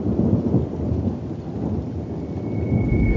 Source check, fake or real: real